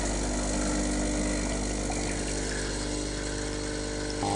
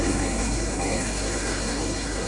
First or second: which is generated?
second